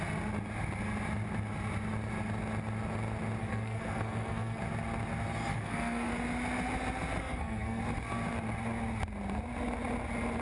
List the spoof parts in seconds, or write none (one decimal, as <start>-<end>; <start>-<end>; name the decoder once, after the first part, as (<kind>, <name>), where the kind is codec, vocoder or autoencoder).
3.4-4.6 (codec, SNAC); 5.5-6.1; 7.2-7.8